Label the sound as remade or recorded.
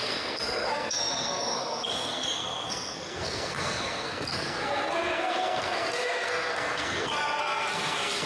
remade